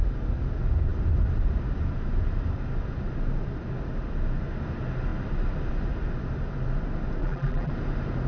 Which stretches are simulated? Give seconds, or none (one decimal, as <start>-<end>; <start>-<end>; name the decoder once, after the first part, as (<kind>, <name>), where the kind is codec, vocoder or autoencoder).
7.2-7.7 (vocoder, BigVGAN v2)